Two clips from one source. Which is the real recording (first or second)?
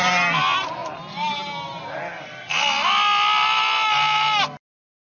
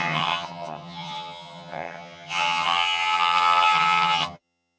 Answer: first